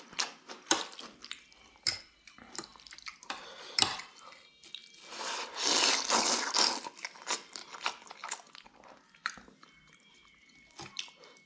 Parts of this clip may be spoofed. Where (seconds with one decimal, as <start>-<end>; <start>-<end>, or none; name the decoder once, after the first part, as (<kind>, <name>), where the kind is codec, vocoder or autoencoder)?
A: 0.0-4.8 (vocoder, BigVGAN v2); 5.5-7.6; 10.4-11.5